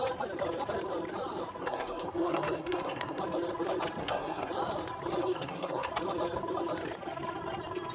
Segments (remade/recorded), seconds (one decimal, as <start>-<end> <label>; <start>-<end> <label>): 0.0-1.6 recorded; 1.6-3.2 remade; 3.2-4.0 recorded; 4.0-4.5 remade; 4.5-5.2 recorded; 5.2-5.9 remade; 5.9-7.9 recorded